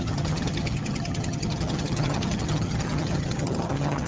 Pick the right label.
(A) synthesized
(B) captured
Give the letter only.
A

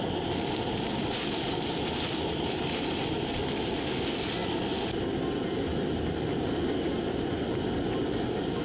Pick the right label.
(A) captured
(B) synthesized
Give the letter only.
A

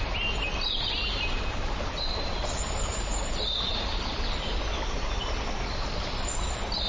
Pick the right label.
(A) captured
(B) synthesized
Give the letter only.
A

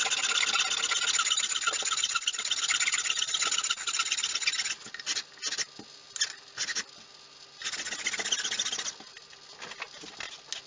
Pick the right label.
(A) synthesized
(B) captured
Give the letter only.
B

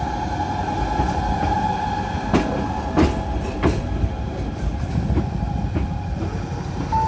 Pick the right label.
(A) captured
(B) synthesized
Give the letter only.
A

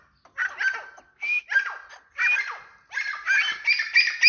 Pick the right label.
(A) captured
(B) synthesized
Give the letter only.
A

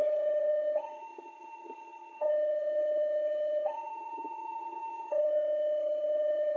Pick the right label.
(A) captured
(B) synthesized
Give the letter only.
B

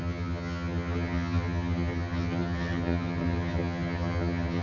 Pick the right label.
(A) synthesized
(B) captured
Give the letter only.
A